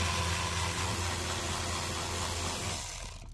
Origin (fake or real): real